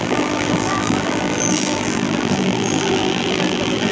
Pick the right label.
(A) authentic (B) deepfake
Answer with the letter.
B